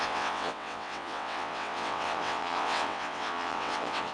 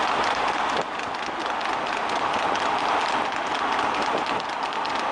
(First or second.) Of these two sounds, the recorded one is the second